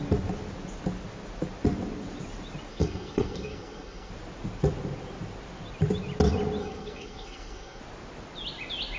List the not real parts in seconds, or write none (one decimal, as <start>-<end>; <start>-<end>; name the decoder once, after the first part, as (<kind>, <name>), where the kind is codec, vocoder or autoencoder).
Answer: 2.7-4.1 (codec, SNAC); 6.6-7.8